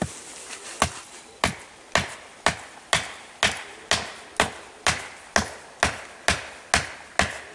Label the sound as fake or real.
real